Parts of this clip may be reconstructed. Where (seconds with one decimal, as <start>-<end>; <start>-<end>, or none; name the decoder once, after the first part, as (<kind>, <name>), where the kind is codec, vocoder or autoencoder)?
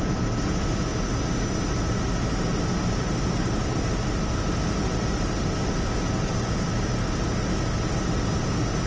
none